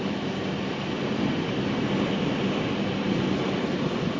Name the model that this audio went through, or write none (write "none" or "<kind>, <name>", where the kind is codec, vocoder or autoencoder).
none